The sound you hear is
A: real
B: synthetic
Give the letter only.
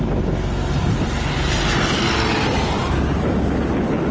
A